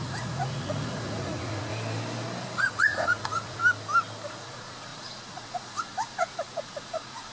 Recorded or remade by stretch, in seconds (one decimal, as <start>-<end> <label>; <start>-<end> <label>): 0.0-1.7 remade; 1.7-2.6 recorded; 2.6-3.6 remade; 3.6-4.3 recorded; 4.3-7.3 remade